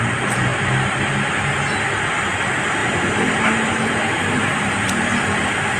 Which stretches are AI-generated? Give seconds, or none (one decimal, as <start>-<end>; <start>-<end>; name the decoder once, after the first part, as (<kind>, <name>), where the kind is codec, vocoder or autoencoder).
2.8-5.1 (vocoder, BigVGAN v2)